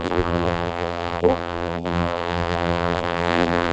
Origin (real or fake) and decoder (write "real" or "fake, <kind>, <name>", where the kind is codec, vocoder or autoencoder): fake, vocoder, BigVGAN v2